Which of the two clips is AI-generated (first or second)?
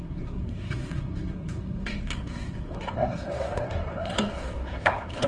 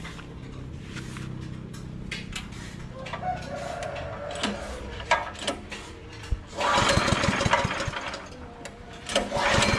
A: first